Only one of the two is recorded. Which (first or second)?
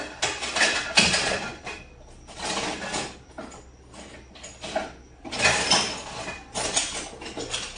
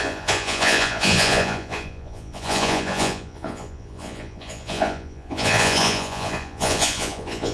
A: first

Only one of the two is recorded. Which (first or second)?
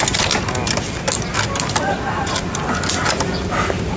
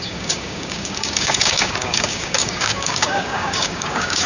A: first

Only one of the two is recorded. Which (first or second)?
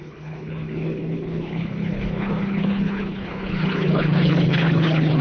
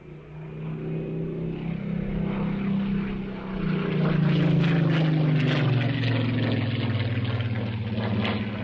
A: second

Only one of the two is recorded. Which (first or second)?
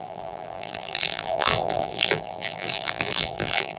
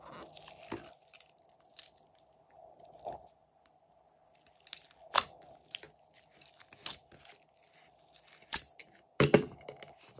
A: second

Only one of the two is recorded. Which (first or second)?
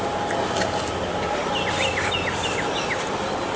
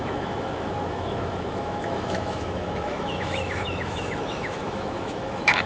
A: first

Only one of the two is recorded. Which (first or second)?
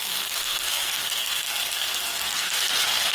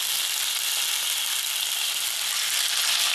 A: second